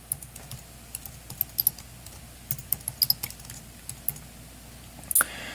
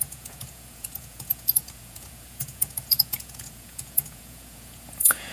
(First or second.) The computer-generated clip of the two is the second